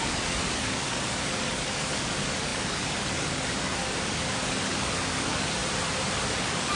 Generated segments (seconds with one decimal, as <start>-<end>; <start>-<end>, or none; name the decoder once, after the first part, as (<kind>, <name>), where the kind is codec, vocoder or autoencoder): 0.0-5.6 (codec, DAC); 6.2-6.8